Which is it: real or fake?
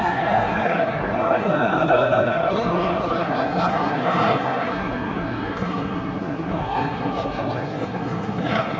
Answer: fake